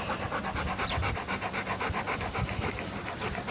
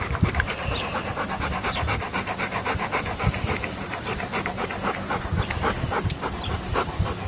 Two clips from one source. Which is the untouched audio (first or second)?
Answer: first